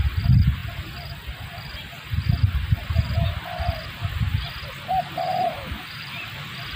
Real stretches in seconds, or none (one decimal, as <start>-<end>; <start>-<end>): 0.0-5.3; 6.0-6.8